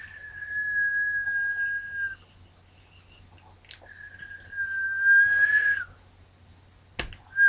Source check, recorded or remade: recorded